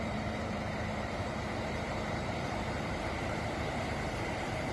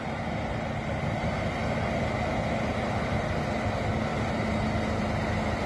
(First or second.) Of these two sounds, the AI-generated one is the first